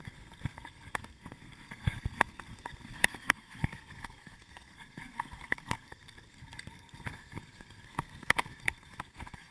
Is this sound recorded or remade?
remade